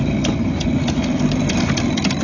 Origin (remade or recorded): recorded